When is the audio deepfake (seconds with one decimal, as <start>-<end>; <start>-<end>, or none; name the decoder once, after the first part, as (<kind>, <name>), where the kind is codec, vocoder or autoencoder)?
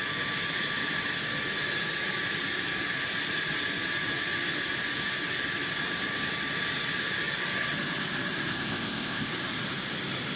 8.5-9.3 (codec, ZipCodec)